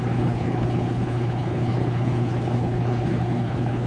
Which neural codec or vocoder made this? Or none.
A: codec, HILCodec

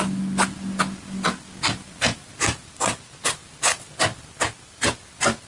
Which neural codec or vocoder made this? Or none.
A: none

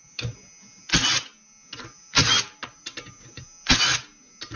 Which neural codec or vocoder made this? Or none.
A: none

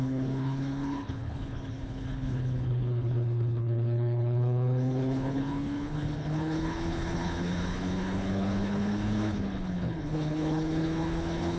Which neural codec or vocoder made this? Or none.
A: codec, HILCodec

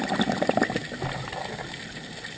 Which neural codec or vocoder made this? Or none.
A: none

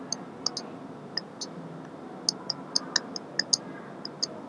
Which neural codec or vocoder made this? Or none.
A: none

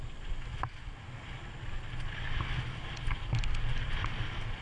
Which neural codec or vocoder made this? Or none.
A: none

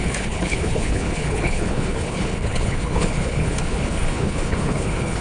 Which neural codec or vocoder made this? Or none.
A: codec, HILCodec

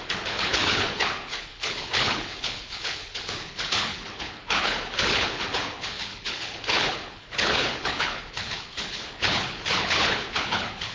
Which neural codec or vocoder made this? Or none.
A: codec, HILCodec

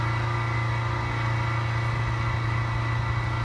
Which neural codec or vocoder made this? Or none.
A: none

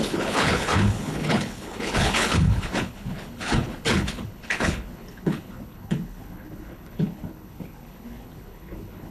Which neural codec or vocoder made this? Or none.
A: codec, HILCodec